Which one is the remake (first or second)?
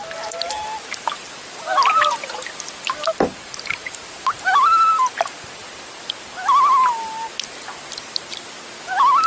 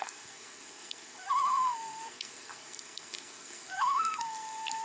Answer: second